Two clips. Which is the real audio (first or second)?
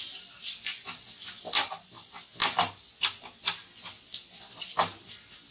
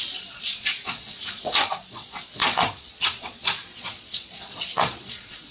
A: first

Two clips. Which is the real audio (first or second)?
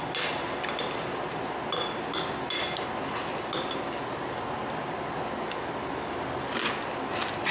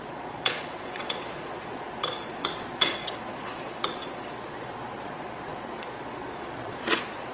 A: first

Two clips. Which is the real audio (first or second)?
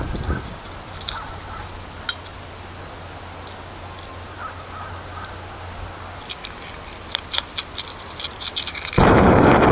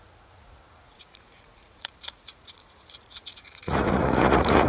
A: first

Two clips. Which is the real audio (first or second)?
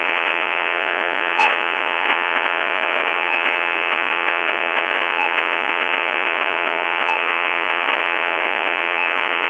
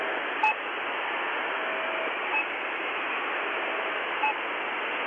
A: second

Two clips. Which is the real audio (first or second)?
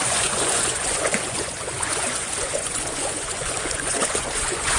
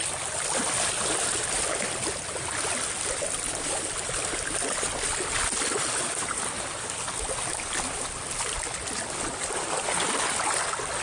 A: second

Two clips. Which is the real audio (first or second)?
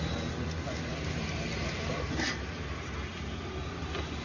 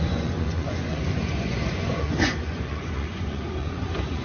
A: first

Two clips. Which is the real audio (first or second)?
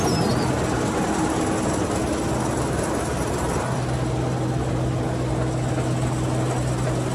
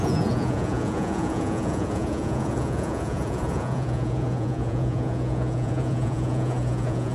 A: first